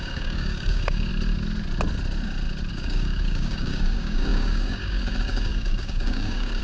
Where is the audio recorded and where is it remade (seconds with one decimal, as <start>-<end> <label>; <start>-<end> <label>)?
0.0-1.1 remade; 1.1-2.7 recorded; 2.7-6.6 remade